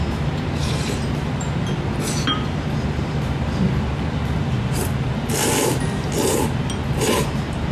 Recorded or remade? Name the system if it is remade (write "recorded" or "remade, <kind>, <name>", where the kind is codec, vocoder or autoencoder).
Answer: remade, vocoder, BigVGAN v2